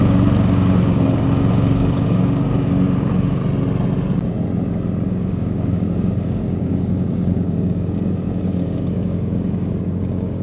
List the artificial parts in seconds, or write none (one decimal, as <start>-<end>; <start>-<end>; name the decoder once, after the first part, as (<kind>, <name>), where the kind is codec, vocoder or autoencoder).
0.0-3.4 (codec, DAC); 5.1-10.4